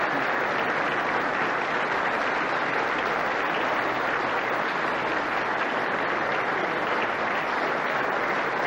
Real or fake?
real